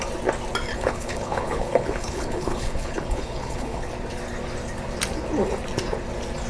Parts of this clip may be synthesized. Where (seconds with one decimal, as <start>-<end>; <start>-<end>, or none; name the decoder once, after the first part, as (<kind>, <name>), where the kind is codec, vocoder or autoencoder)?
0.7-3.9 (codec, HILCodec)